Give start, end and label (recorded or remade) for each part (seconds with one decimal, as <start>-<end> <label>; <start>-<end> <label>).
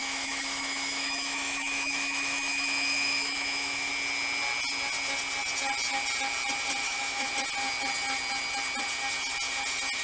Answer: 0.0-3.9 remade; 3.9-6.8 recorded; 6.8-7.3 remade; 7.3-10.0 recorded